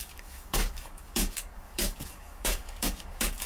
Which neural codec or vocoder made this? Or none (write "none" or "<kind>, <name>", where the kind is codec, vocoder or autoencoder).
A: codec, DAC